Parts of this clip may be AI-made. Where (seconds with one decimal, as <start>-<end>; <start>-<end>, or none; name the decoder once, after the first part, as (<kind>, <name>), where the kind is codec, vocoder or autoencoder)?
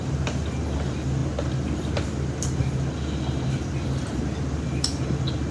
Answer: none